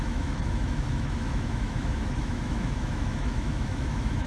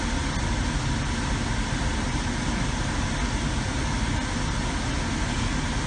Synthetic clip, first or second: first